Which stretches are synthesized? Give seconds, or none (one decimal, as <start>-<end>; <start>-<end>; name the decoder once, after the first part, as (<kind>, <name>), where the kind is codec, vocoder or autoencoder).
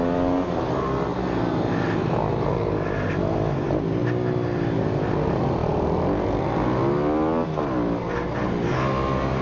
none